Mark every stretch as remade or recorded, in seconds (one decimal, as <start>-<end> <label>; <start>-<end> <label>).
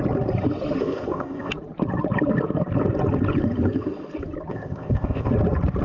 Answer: 0.0-0.8 recorded; 0.8-1.5 remade; 1.5-4.5 recorded; 4.5-5.3 remade; 5.3-5.8 recorded